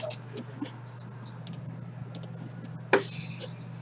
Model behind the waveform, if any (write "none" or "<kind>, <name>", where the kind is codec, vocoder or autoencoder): none